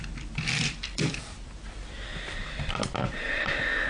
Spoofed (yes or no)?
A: yes